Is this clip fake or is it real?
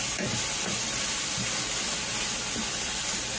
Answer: real